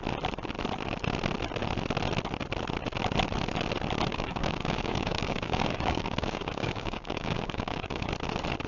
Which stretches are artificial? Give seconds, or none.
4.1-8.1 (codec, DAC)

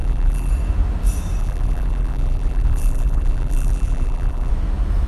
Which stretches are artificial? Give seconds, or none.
0.0-0.5 (vocoder, BigVGAN v2); 1.4-4.5